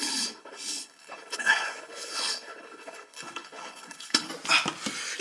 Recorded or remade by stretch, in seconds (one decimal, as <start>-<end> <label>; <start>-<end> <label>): 0.0-4.3 remade; 4.3-5.2 recorded